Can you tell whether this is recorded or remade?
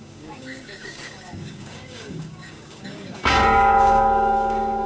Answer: remade